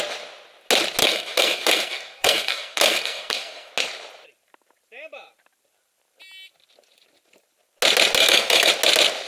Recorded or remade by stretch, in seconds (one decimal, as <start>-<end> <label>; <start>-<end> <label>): 0.0-1.0 recorded; 1.0-3.7 remade; 3.7-8.2 recorded; 8.2-8.7 remade; 8.7-9.3 recorded